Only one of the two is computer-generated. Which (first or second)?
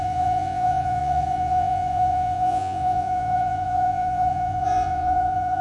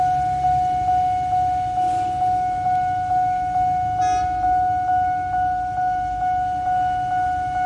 first